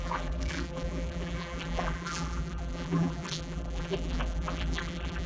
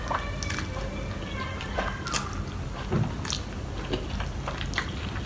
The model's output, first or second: first